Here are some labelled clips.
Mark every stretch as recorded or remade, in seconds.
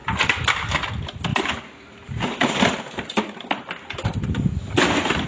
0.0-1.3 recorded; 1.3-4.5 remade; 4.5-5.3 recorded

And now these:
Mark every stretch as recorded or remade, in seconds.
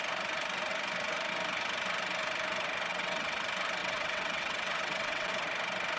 0.0-2.9 recorded; 2.9-3.4 remade; 3.4-3.8 recorded; 3.8-5.3 remade; 5.3-6.0 recorded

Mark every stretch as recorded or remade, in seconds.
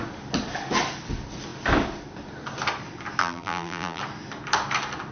0.0-3.2 recorded; 3.2-4.0 remade; 4.0-5.1 recorded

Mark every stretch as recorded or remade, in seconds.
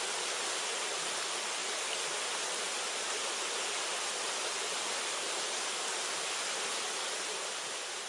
0.0-8.1 recorded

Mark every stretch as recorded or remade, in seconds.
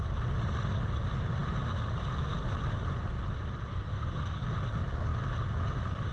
0.0-3.7 recorded; 3.7-4.4 remade; 4.4-6.1 recorded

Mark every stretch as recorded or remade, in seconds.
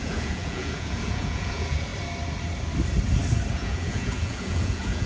0.0-1.9 remade; 1.9-3.5 recorded; 3.5-5.1 remade